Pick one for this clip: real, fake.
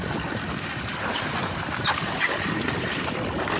real